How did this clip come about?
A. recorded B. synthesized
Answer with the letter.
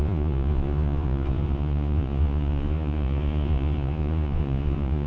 B